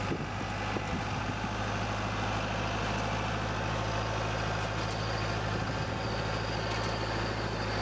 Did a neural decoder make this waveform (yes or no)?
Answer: no